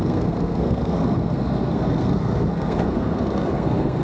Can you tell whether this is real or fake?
fake